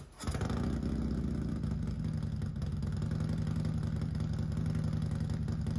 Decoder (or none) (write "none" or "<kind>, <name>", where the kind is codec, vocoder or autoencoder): none